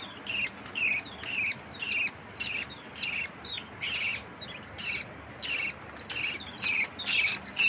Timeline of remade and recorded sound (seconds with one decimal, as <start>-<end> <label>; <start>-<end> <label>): 0.0-7.7 recorded